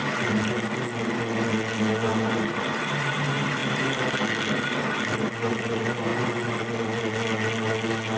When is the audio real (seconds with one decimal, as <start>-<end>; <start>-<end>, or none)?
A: 0.0-8.2